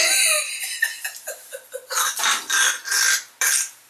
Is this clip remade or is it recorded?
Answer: recorded